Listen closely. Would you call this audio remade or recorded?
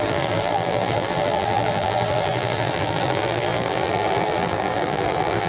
remade